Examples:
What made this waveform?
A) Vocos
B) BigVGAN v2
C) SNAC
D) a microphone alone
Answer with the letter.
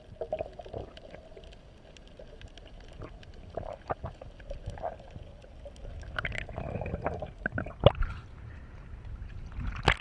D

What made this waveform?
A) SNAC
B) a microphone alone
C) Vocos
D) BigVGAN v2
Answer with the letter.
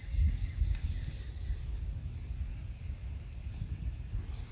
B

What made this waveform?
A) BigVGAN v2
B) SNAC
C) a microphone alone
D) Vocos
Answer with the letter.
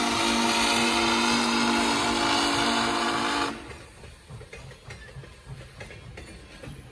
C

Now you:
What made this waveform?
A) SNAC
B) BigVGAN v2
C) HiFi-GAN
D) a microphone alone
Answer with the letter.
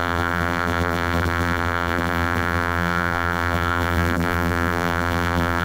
B